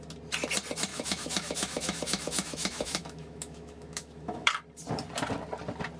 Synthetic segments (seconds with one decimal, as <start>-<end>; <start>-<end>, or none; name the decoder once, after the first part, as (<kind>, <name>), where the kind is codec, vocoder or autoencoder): 0.9-4.5 (autoencoder, DAC-VAE)